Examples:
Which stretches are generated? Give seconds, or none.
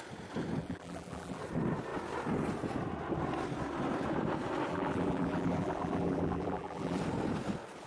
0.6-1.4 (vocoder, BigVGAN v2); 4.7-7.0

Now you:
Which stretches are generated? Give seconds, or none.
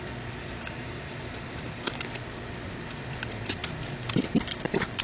0.4-2.0 (vocoder, BigVGAN v2)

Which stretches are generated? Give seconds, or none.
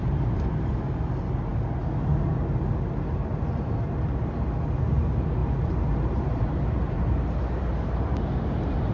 0.0-0.9 (vocoder, BigVGAN v2); 5.4-8.0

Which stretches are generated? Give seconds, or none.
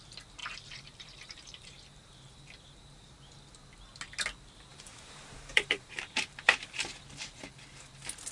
0.4-3.2 (vocoder, BigVGAN v2); 4.7-6.8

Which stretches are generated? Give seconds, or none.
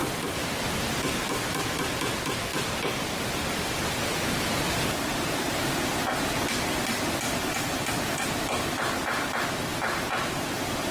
0.0-1.9 (vocoder, BigVGAN v2); 2.5-6.4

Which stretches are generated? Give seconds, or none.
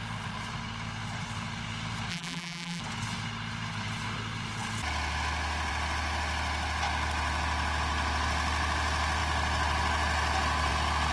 2.1-2.8 (vocoder, BigVGAN v2)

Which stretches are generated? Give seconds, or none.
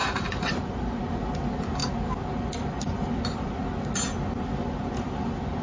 0.0-1.0 (vocoder, BigVGAN v2)